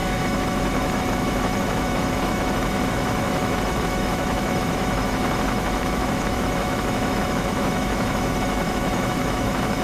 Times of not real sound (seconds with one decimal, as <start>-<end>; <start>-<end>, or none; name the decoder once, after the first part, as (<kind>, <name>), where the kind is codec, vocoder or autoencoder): 0.0-9.8 (autoencoder, DAC-VAE)